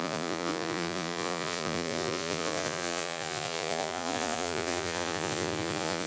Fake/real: fake